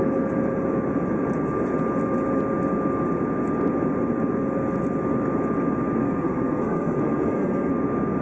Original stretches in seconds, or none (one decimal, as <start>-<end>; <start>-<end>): 0.0-6.0; 7.7-8.2